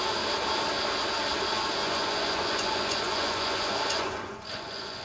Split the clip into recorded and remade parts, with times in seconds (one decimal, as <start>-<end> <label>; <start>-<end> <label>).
0.0-1.8 recorded; 1.8-5.0 remade